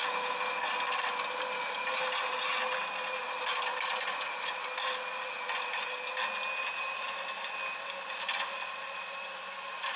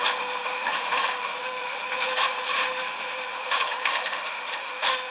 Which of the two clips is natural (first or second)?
first